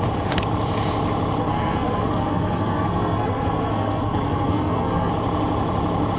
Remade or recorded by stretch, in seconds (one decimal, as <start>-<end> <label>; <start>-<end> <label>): 0.0-1.4 recorded; 1.4-5.1 remade; 5.1-6.2 recorded